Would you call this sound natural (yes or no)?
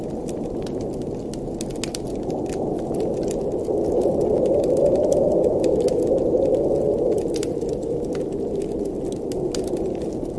yes